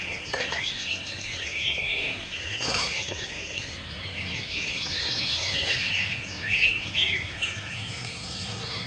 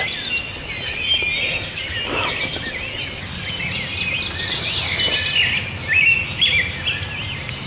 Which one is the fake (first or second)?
first